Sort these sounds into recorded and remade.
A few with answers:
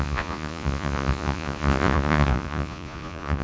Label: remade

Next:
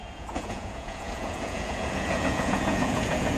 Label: remade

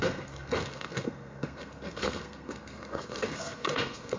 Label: remade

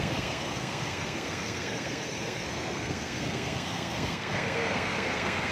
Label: remade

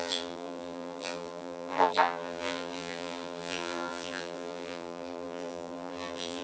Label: remade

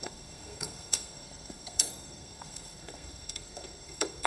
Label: remade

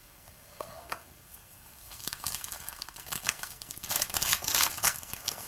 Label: remade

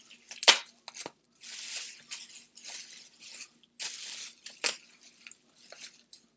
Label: recorded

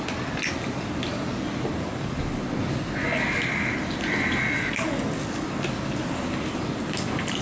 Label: recorded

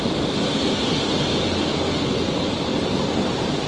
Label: recorded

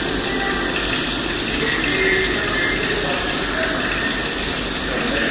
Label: recorded